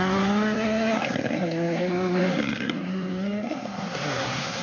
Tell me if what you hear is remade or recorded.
remade